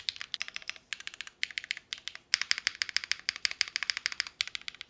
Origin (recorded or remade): recorded